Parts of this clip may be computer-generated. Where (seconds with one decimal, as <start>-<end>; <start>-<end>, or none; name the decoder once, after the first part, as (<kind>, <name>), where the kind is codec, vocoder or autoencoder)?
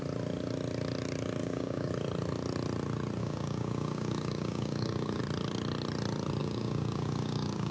1.4-1.9 (codec, DAC); 3.2-5.2; 6.4-7.7